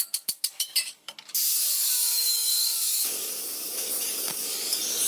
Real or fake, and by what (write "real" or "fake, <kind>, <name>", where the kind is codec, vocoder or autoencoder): fake, codec, DAC